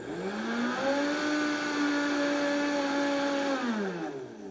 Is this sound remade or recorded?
recorded